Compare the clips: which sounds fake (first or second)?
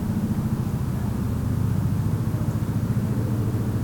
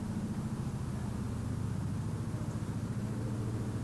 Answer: first